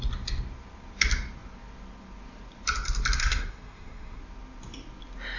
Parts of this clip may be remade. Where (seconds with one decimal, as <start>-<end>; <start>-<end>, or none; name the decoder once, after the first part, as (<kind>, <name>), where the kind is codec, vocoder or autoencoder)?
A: 3.2-4.2 (codec, SNAC)